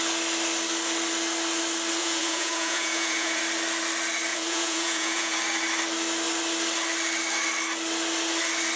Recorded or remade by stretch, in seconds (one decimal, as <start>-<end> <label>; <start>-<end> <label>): 0.0-2.0 recorded; 2.0-3.4 remade; 3.4-4.3 recorded; 4.3-5.4 remade; 5.4-8.8 recorded

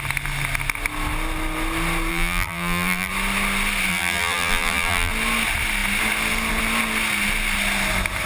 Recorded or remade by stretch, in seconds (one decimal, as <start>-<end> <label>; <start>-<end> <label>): 0.0-2.1 recorded; 2.1-3.1 remade; 3.1-3.9 recorded; 3.9-5.1 remade; 5.1-8.3 recorded

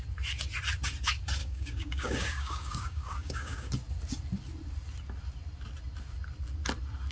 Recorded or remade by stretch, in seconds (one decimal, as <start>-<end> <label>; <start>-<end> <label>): 0.0-1.4 recorded; 1.4-3.7 remade; 3.7-7.1 recorded

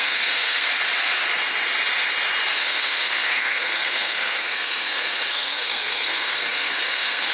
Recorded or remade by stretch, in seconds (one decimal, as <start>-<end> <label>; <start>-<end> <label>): 0.0-0.7 remade; 0.7-2.6 recorded; 2.6-7.3 remade

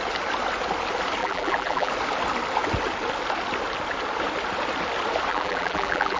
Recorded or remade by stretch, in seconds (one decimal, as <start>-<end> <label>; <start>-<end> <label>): 0.0-1.2 recorded; 1.2-1.9 remade; 1.9-5.3 recorded; 5.3-6.2 remade